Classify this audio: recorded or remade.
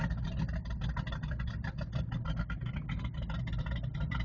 recorded